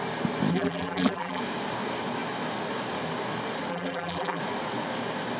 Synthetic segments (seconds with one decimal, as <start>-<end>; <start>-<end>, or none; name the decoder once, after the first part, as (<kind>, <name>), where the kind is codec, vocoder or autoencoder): 0.5-1.4 (vocoder, BigVGAN v2); 3.7-4.4